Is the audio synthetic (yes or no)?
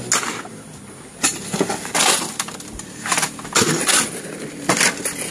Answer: no